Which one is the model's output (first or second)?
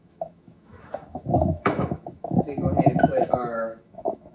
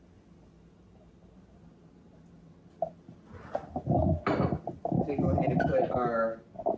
first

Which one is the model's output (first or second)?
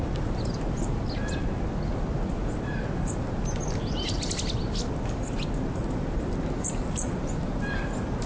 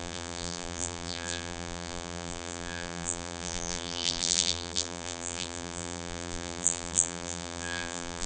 second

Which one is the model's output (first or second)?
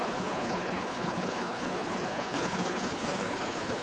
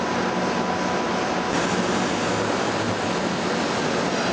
first